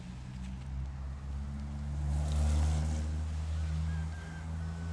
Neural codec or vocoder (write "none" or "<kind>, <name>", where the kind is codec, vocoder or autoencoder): none